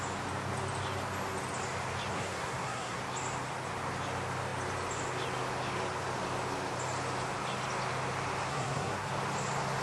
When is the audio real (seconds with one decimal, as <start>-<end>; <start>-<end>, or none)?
0.0-2.1; 3.0-8.5; 9.1-9.8